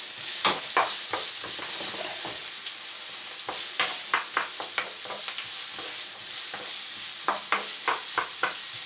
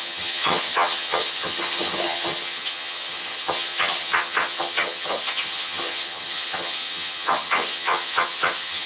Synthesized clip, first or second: second